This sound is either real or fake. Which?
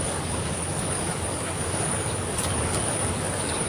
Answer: fake